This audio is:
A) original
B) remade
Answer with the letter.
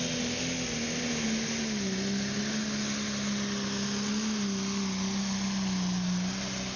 A